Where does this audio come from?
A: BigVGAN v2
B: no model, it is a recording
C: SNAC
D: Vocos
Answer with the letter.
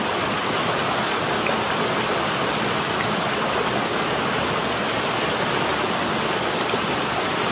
B